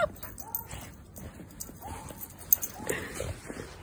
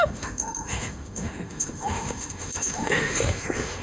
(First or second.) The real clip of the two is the first